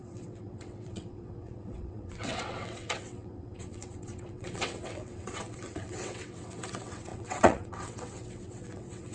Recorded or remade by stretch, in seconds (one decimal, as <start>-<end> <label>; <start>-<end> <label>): 0.0-9.1 remade